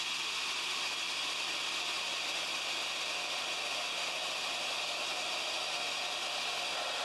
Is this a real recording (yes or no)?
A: yes